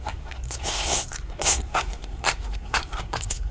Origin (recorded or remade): remade